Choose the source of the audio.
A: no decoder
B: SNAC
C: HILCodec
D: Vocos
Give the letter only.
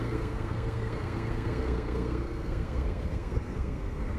B